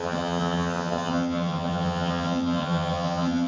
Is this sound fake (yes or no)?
yes